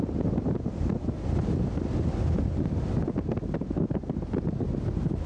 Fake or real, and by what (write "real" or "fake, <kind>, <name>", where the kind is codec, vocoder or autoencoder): real